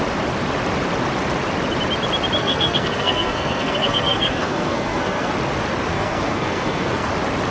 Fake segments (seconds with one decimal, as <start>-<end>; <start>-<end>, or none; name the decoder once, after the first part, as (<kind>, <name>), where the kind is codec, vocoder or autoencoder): 2.4-5.3 (codec, SNAC); 5.9-7.1